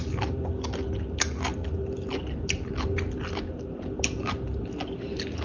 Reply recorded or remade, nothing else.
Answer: recorded